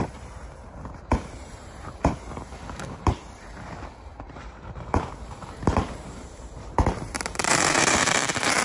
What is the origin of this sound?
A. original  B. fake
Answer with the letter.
B